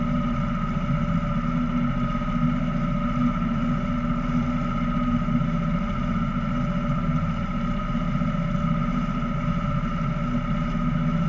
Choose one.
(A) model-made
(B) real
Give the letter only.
B